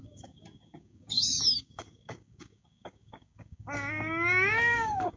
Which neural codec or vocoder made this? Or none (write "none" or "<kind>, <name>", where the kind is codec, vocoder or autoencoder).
codec, DAC